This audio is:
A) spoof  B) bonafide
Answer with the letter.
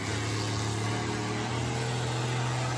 B